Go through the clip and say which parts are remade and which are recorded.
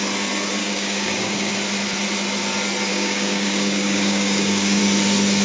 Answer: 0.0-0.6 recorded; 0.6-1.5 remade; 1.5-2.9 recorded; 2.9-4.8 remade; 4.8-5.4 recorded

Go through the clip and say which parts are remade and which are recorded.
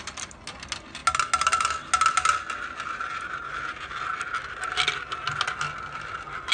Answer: 0.0-6.5 recorded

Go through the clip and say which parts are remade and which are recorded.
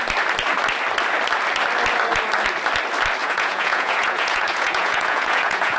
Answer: 0.0-3.2 recorded; 3.2-5.8 remade